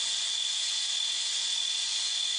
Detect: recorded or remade remade